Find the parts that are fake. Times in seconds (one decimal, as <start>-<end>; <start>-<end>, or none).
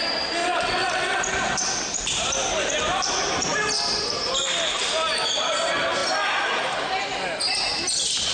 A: 0.4-1.2